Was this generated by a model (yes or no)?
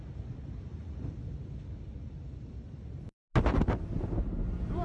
no